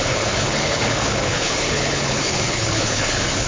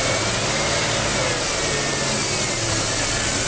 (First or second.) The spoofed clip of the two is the first